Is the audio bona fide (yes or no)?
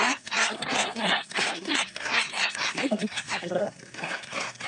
no